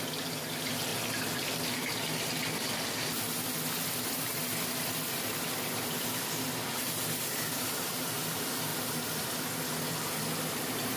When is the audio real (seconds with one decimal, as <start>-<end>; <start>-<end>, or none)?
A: 0.9-5.9; 8.7-10.5